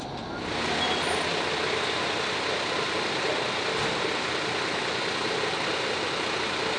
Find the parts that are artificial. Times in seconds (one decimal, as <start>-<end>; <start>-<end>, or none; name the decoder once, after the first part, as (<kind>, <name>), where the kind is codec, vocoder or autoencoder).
none

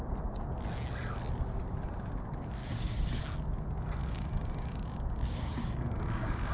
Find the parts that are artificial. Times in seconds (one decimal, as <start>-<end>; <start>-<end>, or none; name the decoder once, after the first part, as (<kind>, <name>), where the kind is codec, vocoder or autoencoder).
2.6-3.2 (codec, DAC); 4.0-6.5

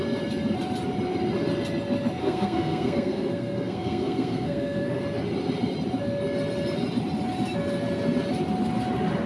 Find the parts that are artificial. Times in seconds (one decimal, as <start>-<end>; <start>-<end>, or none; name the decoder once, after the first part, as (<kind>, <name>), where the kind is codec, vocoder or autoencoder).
2.2-5.0 (codec, SNAC)

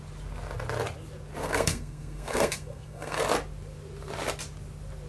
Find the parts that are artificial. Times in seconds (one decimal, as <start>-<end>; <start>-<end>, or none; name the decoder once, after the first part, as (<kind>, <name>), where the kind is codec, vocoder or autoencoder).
1.4-3.2 (codec, SNAC)

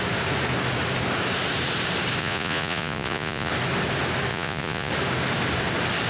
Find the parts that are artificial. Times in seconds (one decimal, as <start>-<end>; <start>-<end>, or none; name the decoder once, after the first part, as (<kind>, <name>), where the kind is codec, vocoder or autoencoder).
2.2-3.5 (vocoder, Vocos); 4.3-4.9

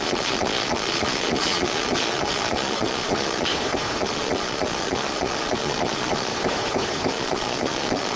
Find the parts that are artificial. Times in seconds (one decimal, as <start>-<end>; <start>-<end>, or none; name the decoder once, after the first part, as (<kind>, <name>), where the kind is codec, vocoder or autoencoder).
0.0-3.5 (vocoder, Vocos); 4.0-6.3; 7.1-8.2

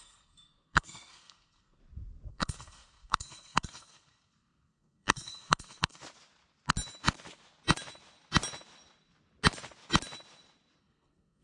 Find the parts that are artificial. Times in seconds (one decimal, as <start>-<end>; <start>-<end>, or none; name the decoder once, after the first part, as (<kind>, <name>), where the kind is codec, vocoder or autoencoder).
0.0-1.8 (codec, SNAC); 2.3-6.0; 10.8-11.4